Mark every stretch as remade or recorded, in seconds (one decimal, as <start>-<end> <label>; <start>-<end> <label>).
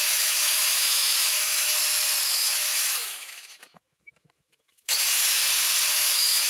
0.0-1.8 remade; 1.8-2.3 recorded; 2.3-5.4 remade; 5.4-5.9 recorded; 5.9-6.5 remade